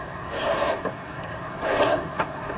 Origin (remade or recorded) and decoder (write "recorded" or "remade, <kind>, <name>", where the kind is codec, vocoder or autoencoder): remade, codec, SNAC